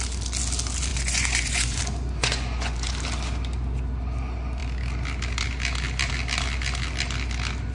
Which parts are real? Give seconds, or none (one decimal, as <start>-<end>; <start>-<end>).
0.0-0.9; 1.8-2.2; 2.9-7.7